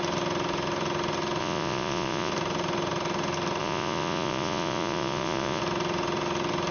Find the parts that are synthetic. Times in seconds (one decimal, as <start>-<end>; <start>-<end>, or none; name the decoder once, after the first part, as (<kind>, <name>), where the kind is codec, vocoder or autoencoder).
1.4-2.3 (vocoder, Vocos); 3.6-5.6